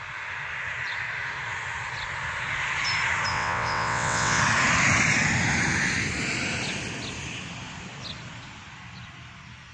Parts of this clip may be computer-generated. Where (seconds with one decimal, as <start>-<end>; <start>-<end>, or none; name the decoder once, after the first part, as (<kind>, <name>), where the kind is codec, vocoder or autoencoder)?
3.3-4.4 (vocoder, WaveNeXt)

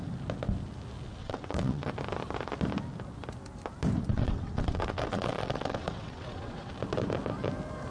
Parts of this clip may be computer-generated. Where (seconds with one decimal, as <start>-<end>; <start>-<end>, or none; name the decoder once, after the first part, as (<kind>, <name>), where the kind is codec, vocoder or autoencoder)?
1.2-1.9 (vocoder, WaveNeXt); 4.1-6.7

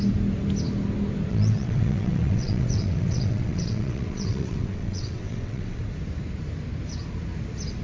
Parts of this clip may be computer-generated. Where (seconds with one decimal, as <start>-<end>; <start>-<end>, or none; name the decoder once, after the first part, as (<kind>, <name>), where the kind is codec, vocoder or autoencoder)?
1.3-5.8 (vocoder, WaveNeXt)